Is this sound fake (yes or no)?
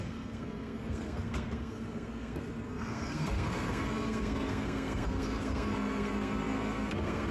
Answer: yes